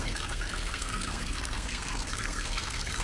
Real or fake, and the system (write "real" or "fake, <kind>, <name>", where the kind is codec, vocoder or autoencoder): fake, codec, SNAC